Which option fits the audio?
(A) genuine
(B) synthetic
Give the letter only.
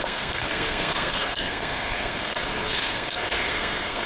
B